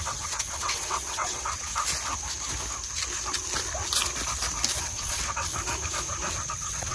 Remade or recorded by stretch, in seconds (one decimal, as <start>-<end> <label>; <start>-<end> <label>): 0.0-1.7 remade; 1.7-4.8 recorded; 4.8-5.5 remade; 5.5-6.5 recorded; 6.5-6.9 remade